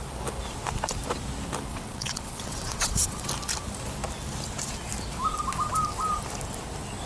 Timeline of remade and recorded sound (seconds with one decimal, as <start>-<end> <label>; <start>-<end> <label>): 0.0-1.7 recorded; 1.7-3.3 remade; 3.3-7.1 recorded